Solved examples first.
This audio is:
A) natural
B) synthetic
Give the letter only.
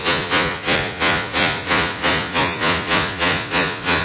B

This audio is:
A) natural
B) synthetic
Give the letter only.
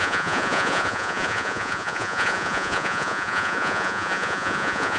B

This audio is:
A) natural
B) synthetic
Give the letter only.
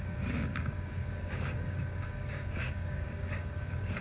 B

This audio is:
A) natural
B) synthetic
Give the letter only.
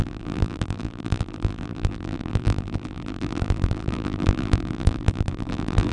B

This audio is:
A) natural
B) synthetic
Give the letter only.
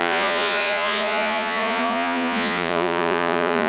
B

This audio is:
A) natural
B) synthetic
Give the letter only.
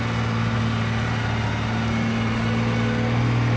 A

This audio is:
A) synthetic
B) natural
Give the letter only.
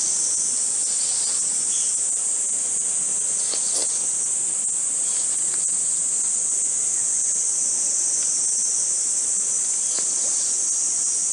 B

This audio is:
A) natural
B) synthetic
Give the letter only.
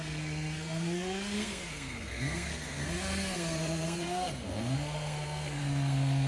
B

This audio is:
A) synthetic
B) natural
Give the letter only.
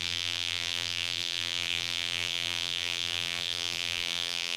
A